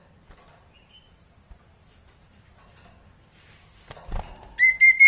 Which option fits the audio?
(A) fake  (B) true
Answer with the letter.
B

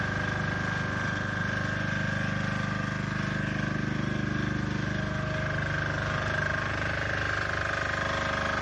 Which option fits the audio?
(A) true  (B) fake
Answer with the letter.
A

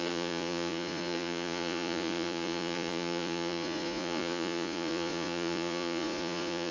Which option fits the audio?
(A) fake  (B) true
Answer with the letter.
A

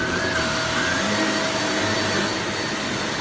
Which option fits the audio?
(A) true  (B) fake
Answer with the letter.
A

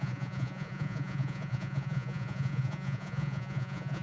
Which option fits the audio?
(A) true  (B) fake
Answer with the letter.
B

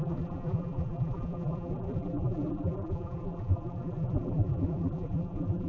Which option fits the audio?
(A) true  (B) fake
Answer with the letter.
B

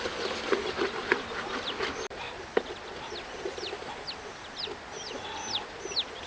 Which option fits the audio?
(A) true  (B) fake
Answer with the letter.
A